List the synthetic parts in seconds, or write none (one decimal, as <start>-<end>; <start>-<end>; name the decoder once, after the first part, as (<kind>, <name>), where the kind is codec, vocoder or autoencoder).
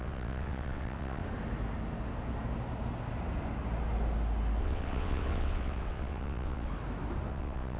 0.0-1.2 (vocoder, WaveNeXt); 4.6-6.7; 7.3-7.8